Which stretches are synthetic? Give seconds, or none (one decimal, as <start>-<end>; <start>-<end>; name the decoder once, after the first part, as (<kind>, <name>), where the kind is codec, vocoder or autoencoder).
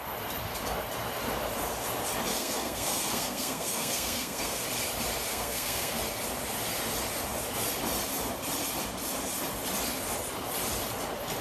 2.3-4.6 (codec, SNAC); 5.3-6.0